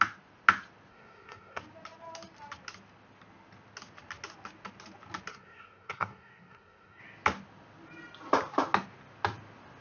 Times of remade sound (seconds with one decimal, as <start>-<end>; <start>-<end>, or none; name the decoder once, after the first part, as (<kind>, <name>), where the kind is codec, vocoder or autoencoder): 0.9-1.6 (codec, SNAC); 5.3-7.0